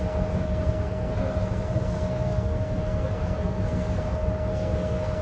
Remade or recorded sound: remade